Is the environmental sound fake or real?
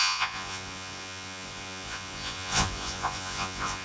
fake